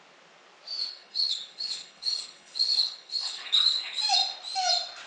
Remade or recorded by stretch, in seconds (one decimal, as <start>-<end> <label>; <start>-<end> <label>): 0.0-0.9 recorded; 0.9-4.0 remade; 4.0-5.1 recorded